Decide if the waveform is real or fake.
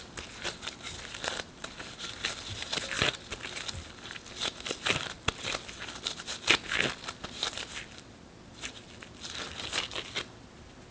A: real